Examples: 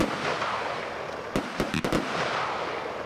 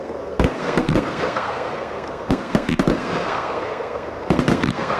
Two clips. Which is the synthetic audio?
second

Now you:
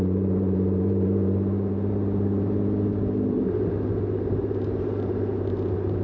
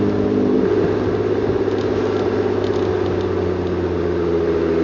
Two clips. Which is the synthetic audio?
first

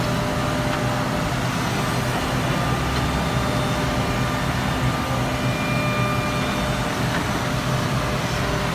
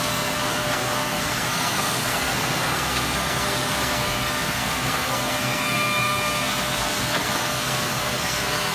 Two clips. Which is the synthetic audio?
second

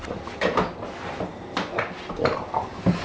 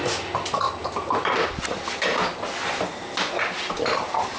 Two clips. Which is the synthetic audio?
first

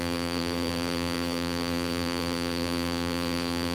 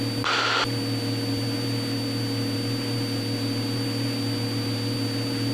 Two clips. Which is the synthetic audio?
first